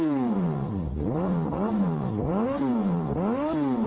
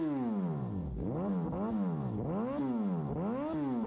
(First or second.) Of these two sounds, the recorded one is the second